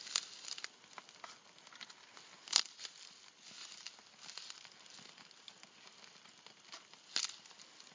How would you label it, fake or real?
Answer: real